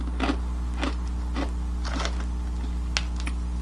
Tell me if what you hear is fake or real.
real